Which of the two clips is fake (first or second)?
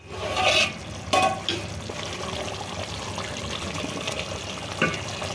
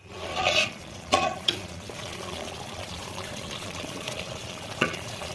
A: second